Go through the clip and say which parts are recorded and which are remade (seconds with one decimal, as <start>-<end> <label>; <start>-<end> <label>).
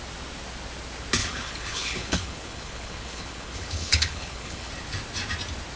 0.0-1.2 recorded; 1.2-4.7 remade; 4.7-5.8 recorded